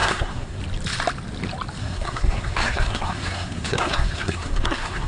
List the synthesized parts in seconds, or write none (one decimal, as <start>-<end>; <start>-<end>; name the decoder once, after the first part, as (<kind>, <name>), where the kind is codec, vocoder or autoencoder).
0.0-0.6 (codec, SNAC); 1.8-5.1